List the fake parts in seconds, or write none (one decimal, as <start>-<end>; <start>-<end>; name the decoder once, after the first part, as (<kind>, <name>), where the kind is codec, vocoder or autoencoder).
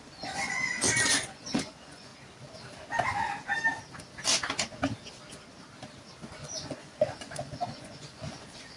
0.0-2.1 (vocoder, Vocos); 6.3-8.8